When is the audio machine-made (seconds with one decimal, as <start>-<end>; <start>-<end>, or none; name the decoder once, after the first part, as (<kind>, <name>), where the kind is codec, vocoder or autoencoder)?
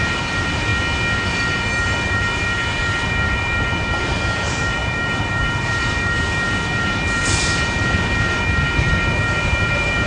0.0-0.7 (vocoder, BigVGAN v2); 1.3-10.1